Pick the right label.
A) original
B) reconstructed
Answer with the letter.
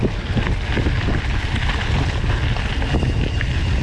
A